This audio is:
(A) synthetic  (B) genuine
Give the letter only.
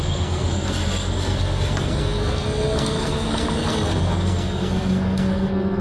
A